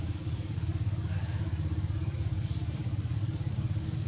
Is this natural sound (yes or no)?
no